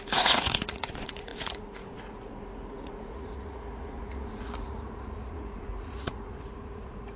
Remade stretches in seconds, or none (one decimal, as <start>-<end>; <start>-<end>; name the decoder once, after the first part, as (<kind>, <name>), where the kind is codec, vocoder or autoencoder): 0.0-7.2 (vocoder, Vocos)